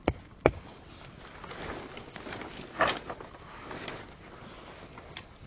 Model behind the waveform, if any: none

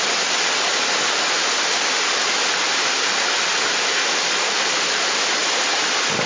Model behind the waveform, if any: none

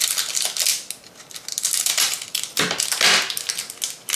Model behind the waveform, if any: none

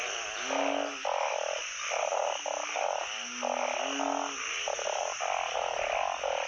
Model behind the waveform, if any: none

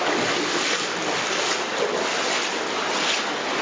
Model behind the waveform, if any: none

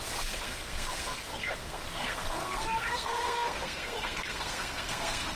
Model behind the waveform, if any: codec, SNAC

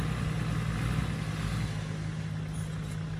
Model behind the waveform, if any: none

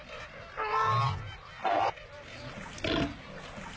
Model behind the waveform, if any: none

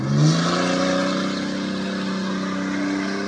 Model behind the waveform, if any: none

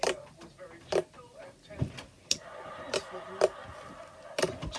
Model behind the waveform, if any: none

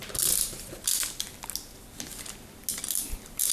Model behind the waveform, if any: none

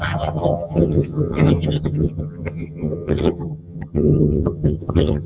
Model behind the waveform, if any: vocoder, HiFi-GAN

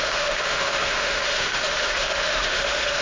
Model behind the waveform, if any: autoencoder, DAC-VAE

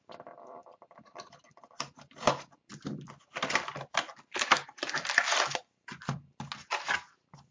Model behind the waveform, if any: none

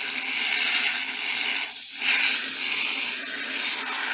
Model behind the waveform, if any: none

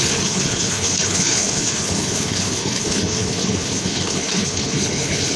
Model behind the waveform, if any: codec, HILCodec